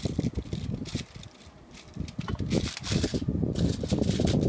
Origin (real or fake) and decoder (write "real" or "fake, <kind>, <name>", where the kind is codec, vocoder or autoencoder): fake, vocoder, BigVGAN v2